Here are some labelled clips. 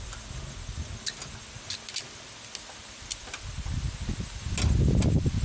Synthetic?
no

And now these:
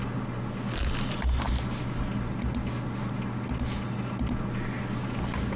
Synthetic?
no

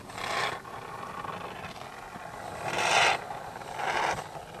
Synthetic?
no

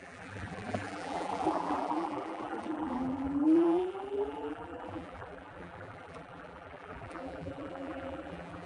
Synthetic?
yes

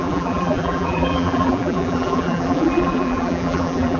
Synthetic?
yes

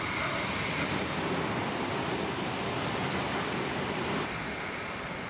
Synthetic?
no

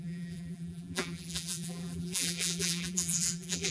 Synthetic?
yes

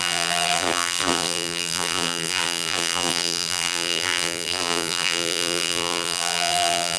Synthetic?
yes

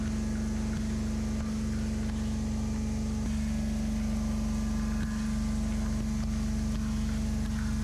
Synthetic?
no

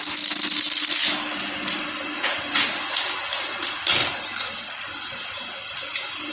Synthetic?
no